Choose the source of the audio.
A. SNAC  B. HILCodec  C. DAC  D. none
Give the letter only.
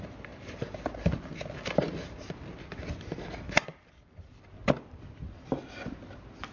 D